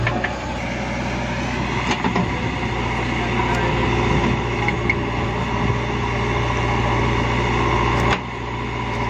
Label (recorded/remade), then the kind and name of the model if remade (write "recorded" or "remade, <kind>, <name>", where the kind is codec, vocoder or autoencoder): recorded